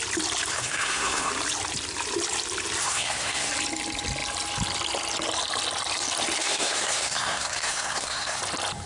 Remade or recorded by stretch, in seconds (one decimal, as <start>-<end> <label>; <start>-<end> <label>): 0.0-0.5 recorded; 0.5-1.3 remade; 1.3-2.8 recorded; 2.8-3.5 remade; 3.5-6.4 recorded; 6.4-8.4 remade; 8.4-8.9 recorded